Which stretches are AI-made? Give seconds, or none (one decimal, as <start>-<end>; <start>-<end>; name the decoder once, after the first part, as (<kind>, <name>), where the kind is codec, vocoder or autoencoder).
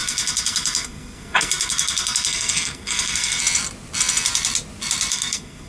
0.0-3.4 (codec, SNAC); 5.1-5.7